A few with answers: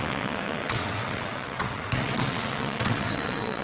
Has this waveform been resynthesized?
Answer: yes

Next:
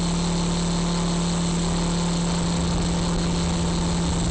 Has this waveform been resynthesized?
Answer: no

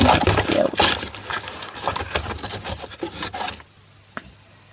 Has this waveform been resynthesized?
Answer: no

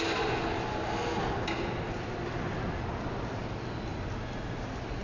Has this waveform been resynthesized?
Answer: no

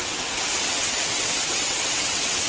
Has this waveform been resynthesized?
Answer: yes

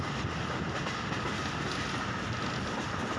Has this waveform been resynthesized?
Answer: no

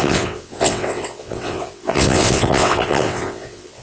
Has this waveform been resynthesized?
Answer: yes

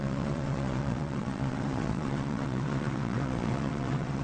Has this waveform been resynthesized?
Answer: yes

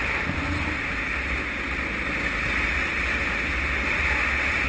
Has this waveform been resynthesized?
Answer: no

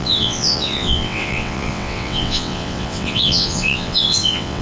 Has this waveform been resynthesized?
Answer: yes